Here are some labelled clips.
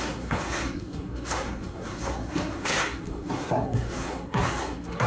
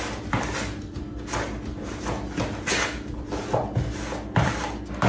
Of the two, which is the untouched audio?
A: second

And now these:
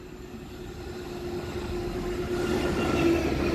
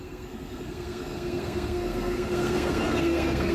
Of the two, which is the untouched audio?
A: first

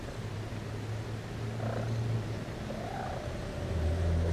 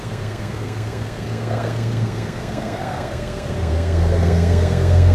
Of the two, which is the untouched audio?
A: first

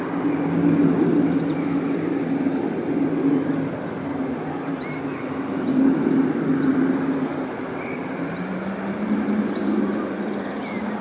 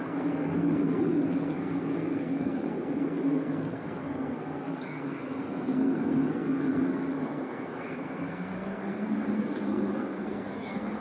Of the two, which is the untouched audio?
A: first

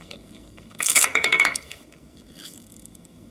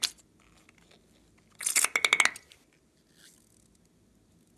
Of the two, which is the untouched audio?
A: second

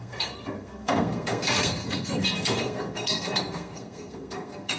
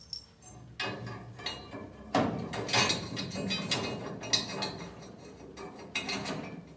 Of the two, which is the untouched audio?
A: second